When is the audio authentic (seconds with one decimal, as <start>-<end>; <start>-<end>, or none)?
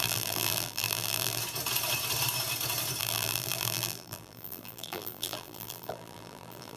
1.4-3.0